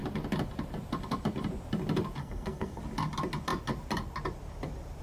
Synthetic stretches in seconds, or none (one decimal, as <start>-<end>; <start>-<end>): 2.2-2.8